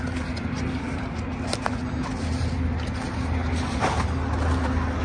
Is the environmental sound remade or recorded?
recorded